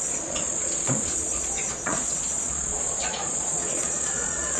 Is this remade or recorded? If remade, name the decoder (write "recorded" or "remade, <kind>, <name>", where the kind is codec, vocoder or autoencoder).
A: remade, vocoder, Vocos